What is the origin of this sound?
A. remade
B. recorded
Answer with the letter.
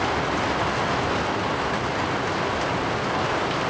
B